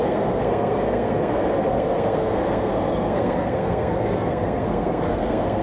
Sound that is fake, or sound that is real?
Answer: fake